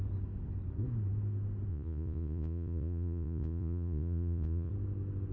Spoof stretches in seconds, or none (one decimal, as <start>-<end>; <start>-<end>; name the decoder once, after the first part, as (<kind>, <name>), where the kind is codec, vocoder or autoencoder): 1.7-4.7 (vocoder, Vocos)